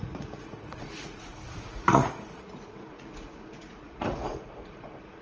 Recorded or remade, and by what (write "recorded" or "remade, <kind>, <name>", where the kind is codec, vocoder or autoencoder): remade, vocoder, Vocos